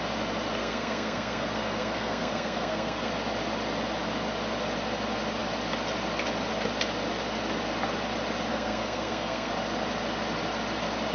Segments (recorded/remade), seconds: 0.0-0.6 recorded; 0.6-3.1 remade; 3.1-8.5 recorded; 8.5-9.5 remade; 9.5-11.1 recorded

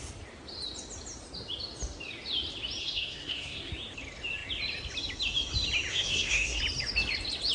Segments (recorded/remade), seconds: 0.0-2.8 recorded; 2.8-3.7 remade; 3.7-5.9 recorded; 5.9-6.6 remade; 6.6-7.5 recorded

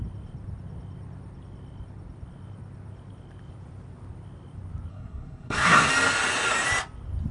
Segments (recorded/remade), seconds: 0.0-4.9 recorded; 4.9-5.9 remade; 5.9-7.3 recorded

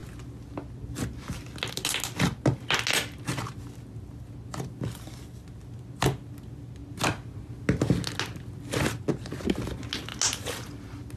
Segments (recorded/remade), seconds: 0.0-11.2 recorded

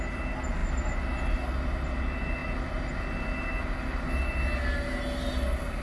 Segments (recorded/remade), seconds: 0.0-5.8 recorded

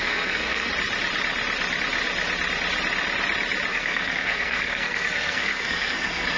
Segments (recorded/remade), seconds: 0.0-0.7 remade; 0.7-3.7 recorded; 3.7-6.4 remade

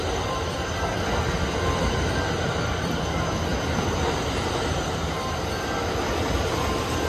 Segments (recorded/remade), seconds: 0.0-7.1 recorded